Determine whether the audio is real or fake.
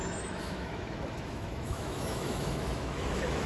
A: fake